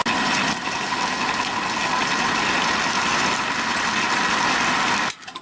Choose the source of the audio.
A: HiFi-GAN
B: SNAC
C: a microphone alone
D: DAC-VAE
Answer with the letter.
C